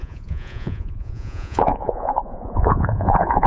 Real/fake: fake